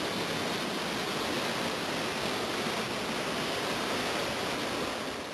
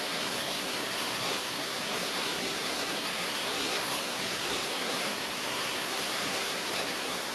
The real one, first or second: first